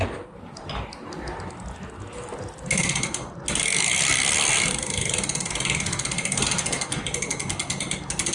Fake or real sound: real